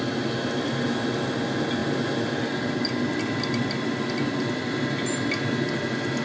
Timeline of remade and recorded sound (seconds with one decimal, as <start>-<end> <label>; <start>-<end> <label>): 0.0-6.2 recorded